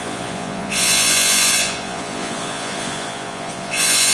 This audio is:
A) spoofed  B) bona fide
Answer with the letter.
A